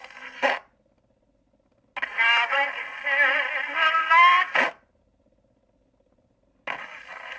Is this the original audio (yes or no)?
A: yes